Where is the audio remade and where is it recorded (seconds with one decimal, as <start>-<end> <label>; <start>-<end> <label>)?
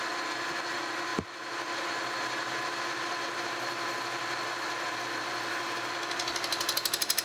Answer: 0.0-7.2 recorded